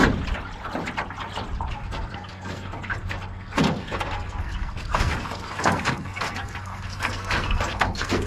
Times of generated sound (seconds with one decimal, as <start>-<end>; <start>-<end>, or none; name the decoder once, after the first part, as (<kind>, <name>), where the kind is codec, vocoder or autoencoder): 1.7-8.3 (codec, SNAC)